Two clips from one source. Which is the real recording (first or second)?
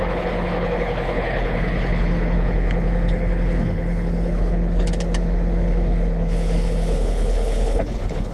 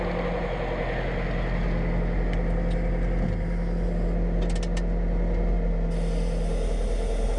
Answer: second